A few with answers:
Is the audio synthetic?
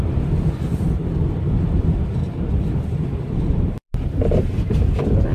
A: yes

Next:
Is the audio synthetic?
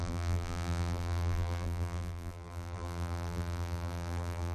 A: yes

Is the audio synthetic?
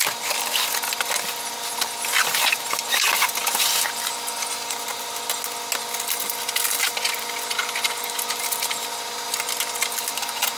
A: no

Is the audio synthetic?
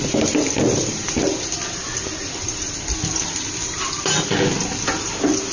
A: no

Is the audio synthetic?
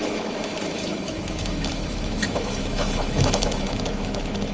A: yes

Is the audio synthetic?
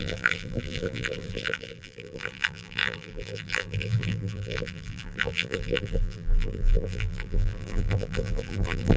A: yes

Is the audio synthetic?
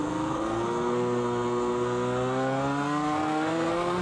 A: yes